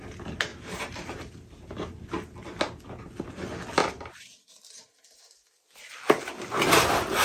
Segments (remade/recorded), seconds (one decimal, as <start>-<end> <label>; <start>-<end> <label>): 0.0-0.5 recorded; 0.5-1.8 remade; 1.8-3.8 recorded; 3.8-4.5 remade; 4.5-7.2 recorded